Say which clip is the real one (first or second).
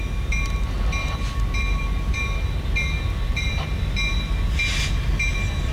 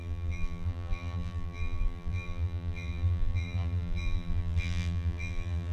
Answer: first